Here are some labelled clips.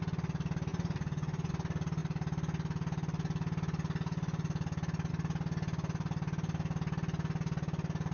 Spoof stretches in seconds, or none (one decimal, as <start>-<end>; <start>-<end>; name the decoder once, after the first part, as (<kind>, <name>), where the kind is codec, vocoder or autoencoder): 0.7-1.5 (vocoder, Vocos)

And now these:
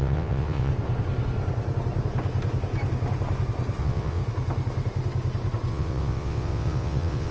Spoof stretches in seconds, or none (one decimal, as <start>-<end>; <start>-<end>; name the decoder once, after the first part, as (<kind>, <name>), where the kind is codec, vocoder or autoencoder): 0.0-0.7 (vocoder, WaveNeXt); 3.8-4.2; 5.7-7.3

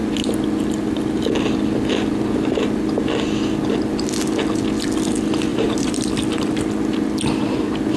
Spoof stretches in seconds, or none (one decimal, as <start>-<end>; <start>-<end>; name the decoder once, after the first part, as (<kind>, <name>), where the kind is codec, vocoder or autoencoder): 5.5-6.1 (vocoder, BigVGAN v2)

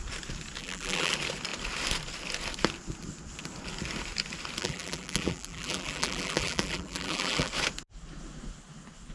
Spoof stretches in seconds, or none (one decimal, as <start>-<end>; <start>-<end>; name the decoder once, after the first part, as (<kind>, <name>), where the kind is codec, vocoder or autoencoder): 0.6-1.1 (vocoder, BigVGAN v2); 4.6-7.5

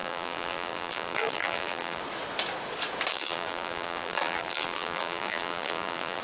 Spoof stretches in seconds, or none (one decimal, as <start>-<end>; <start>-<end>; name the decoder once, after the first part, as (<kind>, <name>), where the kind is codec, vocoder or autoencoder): 0.0-2.0 (vocoder, BigVGAN v2); 3.1-6.2

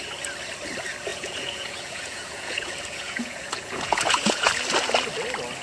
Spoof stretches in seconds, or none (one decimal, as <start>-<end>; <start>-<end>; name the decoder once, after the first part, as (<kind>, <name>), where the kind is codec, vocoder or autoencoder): 1.1-4.5 (vocoder, Vocos)

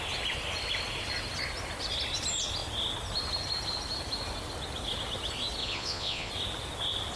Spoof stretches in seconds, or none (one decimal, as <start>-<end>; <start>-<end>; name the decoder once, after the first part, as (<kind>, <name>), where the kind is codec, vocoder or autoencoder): 5.6-6.3 (vocoder, Vocos)

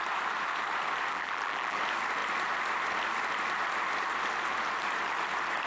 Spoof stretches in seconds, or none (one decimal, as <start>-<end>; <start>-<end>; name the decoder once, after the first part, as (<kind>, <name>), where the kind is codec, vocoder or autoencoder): 1.1-1.8 (vocoder, BigVGAN v2)